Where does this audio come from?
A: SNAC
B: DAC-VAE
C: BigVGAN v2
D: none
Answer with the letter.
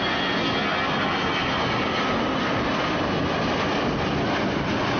D